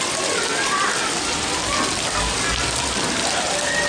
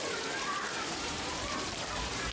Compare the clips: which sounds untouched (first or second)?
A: first